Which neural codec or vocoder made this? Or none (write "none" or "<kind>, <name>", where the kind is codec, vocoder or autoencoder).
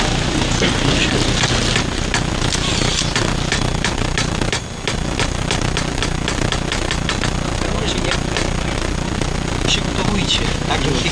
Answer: none